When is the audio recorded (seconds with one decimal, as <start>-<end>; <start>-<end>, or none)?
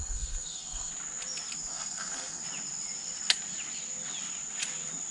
0.9-1.7; 2.4-5.1